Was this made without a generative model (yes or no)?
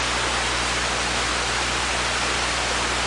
yes